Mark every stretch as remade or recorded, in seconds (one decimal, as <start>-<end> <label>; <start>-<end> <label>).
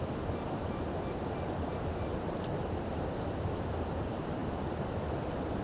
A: 0.0-5.6 recorded